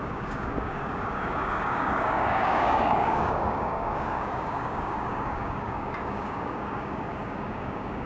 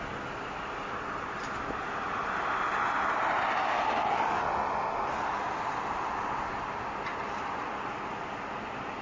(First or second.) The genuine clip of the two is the second